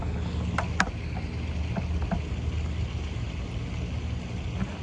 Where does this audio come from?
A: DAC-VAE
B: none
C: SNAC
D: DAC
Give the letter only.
B